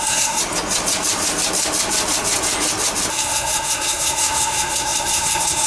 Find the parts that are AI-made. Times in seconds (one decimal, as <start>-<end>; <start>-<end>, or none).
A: 0.0-0.4; 3.1-5.7